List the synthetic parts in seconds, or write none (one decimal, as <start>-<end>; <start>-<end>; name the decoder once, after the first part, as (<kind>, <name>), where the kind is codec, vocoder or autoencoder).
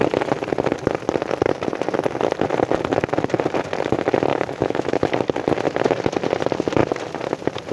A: 4.3-5.1 (autoencoder, DAC-VAE)